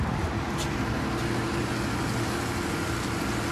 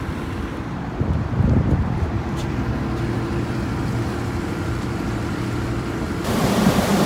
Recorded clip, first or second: first